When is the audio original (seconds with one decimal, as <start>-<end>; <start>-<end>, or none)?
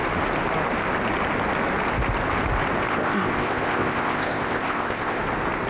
0.0-2.9; 5.2-5.7